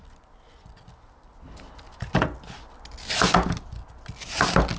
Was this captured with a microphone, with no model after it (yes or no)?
yes